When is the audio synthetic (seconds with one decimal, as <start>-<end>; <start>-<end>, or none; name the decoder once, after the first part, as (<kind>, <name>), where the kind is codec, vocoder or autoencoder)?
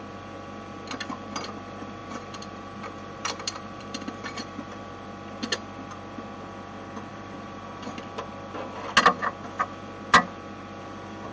2.0-4.9 (vocoder, BigVGAN v2); 7.1-8.3